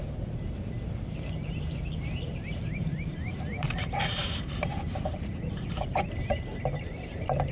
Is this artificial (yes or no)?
yes